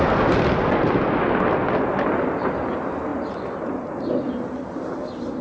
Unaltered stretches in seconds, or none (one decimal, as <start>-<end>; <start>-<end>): 0.0-5.4